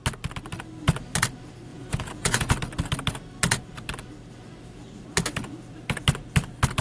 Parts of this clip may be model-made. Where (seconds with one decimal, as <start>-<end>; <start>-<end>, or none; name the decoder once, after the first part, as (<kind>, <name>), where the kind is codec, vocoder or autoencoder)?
1.7-2.5 (vocoder, Vocos)